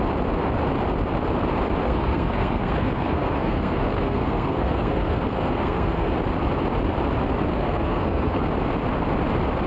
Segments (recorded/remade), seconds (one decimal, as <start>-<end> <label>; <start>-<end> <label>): 0.0-1.8 recorded; 1.8-6.1 remade; 6.1-7.5 recorded; 7.5-8.5 remade; 8.5-9.7 recorded